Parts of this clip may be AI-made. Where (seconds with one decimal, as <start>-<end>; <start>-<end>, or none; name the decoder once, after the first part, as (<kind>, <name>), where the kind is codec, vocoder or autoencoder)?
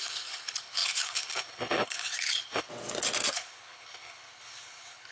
0.0-2.7 (codec, HILCodec); 3.3-5.1